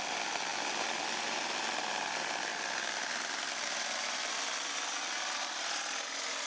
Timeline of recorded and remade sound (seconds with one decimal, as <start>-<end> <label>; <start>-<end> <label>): 0.0-6.5 recorded